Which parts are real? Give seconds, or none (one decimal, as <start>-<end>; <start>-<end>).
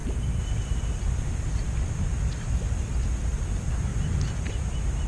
0.0-5.1